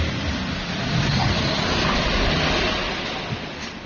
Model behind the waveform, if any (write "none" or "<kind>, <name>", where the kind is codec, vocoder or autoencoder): none